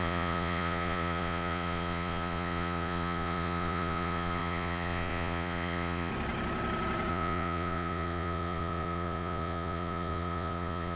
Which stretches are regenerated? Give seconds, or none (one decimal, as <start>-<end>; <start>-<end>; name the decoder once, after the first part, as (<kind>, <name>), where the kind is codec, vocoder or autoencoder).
0.0-6.1 (vocoder, Vocos); 7.1-11.0